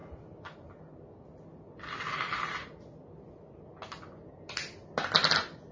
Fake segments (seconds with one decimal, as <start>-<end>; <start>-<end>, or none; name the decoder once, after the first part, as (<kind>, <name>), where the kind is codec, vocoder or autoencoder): none